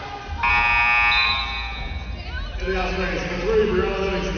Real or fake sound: real